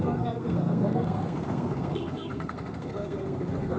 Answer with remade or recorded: remade